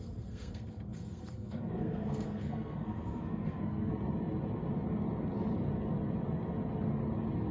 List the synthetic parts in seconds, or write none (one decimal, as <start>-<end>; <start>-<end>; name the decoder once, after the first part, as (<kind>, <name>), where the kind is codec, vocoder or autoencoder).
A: 0.0-3.9 (codec, SNAC)